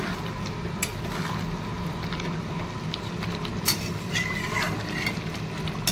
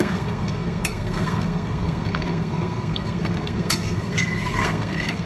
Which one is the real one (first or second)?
first